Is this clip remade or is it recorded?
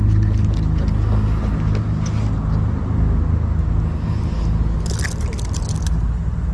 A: recorded